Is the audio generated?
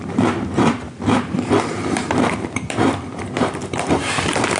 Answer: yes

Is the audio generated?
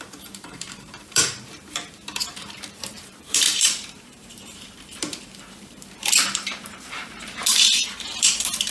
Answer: yes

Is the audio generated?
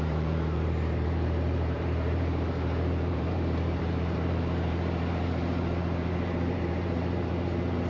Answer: yes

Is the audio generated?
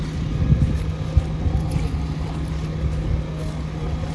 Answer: no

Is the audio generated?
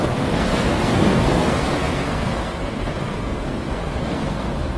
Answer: yes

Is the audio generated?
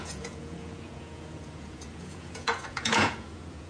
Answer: yes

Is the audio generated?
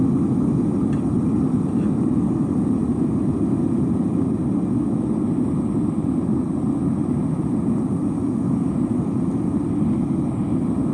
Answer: no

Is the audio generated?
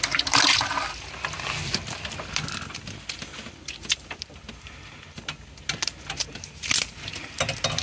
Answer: no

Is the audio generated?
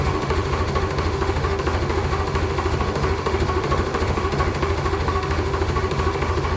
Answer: yes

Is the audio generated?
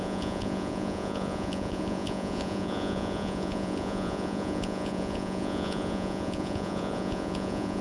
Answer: yes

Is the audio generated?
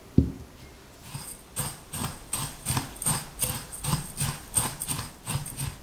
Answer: no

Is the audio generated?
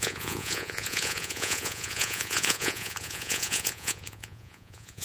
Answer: yes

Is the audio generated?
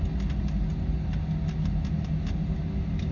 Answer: no